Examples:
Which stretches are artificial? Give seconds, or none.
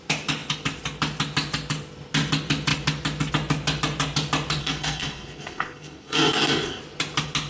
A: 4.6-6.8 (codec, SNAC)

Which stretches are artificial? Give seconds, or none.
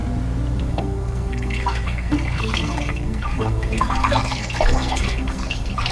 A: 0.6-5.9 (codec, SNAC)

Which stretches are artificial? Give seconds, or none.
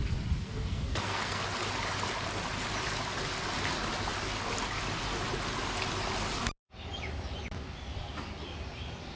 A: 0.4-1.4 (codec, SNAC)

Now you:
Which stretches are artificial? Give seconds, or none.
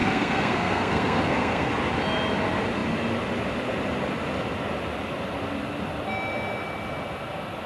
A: 0.0-1.7 (codec, SNAC)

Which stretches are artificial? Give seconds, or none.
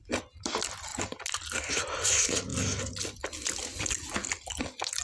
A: none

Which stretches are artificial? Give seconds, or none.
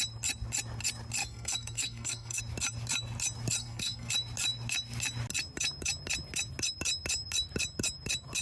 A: 1.2-2.4 (codec, SNAC); 3.6-4.1